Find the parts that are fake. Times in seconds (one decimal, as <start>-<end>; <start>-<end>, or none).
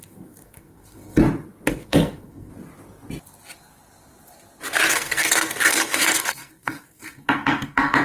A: 0.0-1.2; 1.7-2.5; 4.9-8.0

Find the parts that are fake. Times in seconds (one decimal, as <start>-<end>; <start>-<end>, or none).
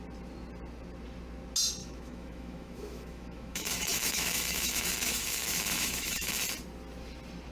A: 1.8-6.3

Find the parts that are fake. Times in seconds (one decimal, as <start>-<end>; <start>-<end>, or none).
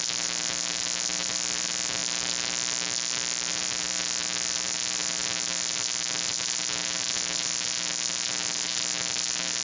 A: none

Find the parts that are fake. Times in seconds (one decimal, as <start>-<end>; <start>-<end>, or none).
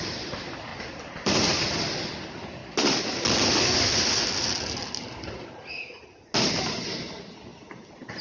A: 0.0-2.6; 5.7-8.2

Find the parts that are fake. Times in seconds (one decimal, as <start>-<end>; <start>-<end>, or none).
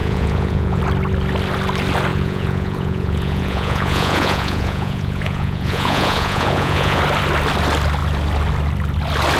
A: 0.0-0.8; 2.1-7.0